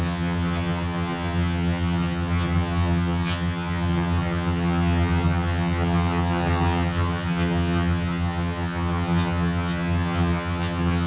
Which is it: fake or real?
fake